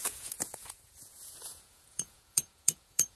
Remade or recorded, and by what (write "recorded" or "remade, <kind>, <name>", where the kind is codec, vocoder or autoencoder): remade, vocoder, Vocos